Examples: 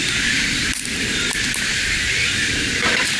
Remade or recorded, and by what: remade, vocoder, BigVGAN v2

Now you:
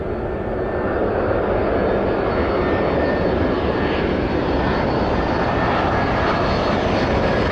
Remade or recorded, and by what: recorded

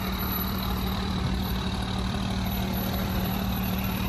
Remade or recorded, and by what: remade, vocoder, BigVGAN v2